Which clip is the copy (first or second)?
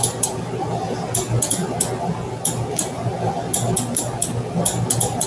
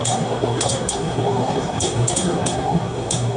second